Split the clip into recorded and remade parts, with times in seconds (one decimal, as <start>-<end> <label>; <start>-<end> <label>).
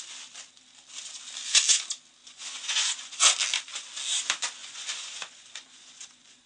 0.0-2.2 recorded; 2.2-3.1 remade; 3.1-4.6 recorded; 4.6-6.5 remade